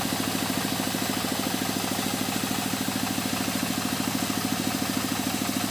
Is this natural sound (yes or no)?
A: yes